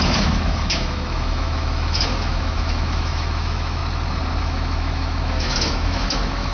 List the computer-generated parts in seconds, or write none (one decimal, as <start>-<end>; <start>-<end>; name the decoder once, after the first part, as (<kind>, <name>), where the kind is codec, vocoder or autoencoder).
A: 0.0-3.8 (autoencoder, DAC-VAE); 4.4-6.5